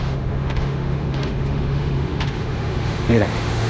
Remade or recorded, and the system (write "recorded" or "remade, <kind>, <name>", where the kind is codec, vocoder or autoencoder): remade, autoencoder, DAC-VAE